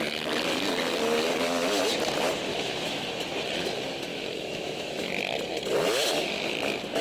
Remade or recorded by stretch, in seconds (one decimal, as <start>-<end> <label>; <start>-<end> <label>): 0.0-2.5 recorded; 2.5-3.1 remade; 3.1-4.1 recorded; 4.1-5.1 remade; 5.1-7.0 recorded